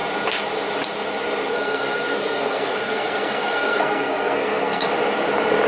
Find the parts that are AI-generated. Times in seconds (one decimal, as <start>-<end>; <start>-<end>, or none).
1.5-4.9